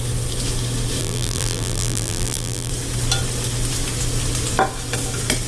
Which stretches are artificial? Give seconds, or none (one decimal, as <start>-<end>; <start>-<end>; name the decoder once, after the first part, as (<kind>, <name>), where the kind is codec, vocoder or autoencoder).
1.0-2.7 (vocoder, BigVGAN v2)